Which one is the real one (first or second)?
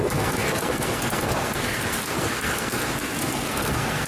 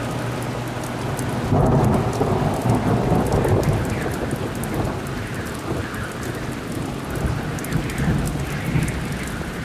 second